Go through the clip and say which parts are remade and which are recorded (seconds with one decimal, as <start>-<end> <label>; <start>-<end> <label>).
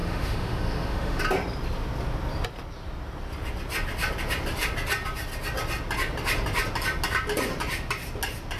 0.0-1.2 remade; 1.2-8.6 recorded